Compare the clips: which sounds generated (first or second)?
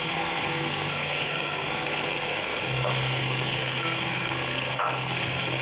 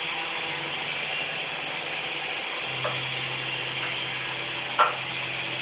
first